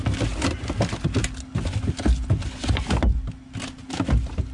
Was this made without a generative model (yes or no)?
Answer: yes